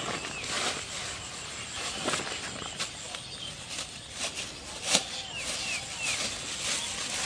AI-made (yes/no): no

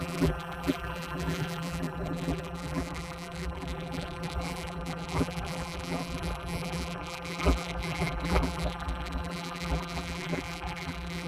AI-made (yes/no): yes